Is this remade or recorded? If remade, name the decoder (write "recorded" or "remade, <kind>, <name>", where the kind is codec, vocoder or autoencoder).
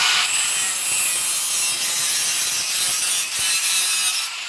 recorded